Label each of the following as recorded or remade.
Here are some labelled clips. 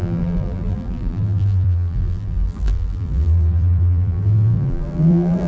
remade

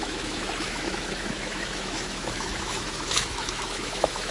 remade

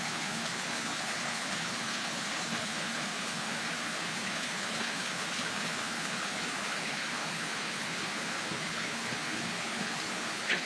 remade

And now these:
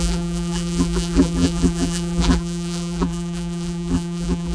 remade